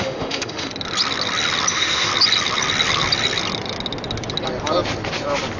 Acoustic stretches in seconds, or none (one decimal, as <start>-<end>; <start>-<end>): 0.7-1.7; 2.1-5.6